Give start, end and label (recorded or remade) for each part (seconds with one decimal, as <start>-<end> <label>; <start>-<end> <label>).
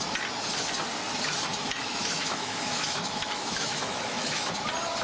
0.0-1.5 recorded; 1.5-4.5 remade; 4.5-5.0 recorded